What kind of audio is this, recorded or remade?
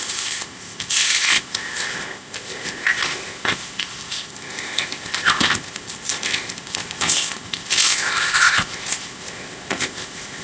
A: remade